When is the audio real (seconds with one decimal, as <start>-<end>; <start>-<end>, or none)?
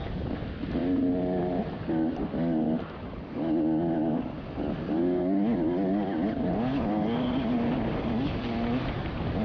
0.0-9.4